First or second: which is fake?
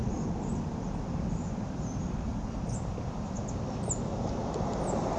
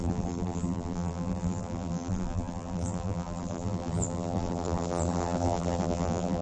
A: second